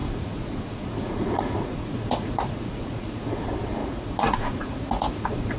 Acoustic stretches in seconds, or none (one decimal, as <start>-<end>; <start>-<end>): 3.4-3.8